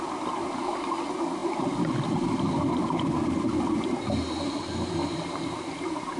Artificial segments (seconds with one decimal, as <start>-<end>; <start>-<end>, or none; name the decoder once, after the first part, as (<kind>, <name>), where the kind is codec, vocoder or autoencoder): none